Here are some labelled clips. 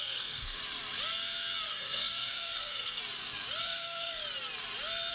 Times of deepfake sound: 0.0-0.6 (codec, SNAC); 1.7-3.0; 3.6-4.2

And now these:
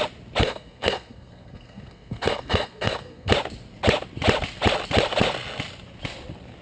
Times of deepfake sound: 0.4-3.3 (codec, SNAC)

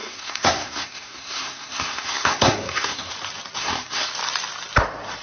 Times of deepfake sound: 0.0-3.1 (codec, SNAC); 3.6-4.1

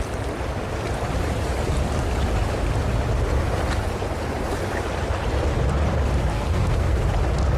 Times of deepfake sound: 6.3-7.0 (codec, SNAC)